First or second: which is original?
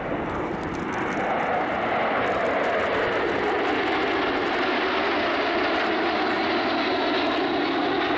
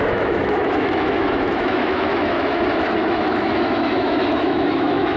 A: first